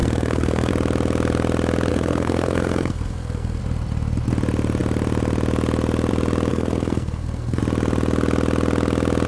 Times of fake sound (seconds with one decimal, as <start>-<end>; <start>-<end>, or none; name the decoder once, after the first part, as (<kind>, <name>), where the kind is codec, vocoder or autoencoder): 0.0-0.7 (codec, SNAC); 1.9-3.6; 6.5-7.6